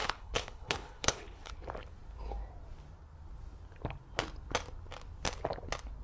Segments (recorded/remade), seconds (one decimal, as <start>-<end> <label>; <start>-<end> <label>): 0.0-1.5 remade; 1.5-6.0 recorded